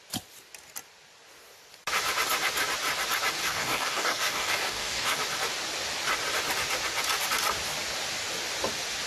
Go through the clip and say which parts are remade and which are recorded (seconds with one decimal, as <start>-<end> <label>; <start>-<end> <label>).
0.0-3.4 recorded; 3.4-5.2 remade; 5.2-9.1 recorded